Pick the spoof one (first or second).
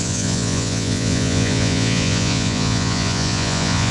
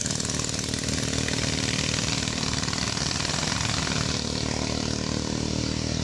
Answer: first